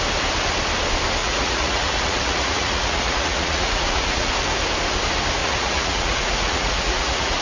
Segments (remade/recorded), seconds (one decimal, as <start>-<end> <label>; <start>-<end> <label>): 0.0-1.2 recorded; 1.2-4.3 remade; 4.3-5.4 recorded; 5.4-7.4 remade